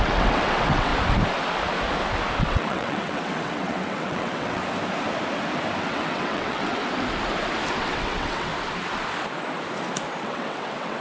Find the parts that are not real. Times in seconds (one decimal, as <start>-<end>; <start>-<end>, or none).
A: 0.0-0.9; 2.4-4.6; 5.8-6.8; 7.8-8.5; 10.2-11.0